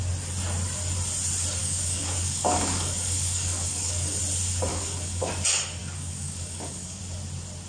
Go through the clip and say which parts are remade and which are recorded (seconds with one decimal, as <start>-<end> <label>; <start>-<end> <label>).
0.0-1.6 recorded; 1.6-4.2 remade; 4.2-4.7 recorded; 4.7-5.3 remade; 5.3-5.8 recorded; 5.8-7.0 remade; 7.0-7.7 recorded